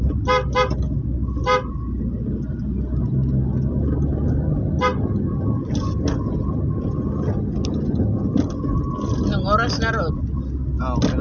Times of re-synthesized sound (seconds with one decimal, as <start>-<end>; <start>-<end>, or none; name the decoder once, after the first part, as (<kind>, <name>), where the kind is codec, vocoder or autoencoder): none